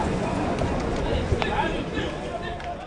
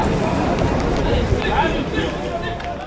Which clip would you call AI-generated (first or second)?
first